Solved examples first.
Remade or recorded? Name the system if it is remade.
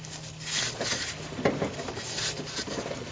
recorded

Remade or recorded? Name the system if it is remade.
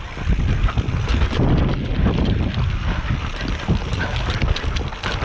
recorded